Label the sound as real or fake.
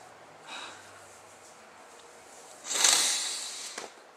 real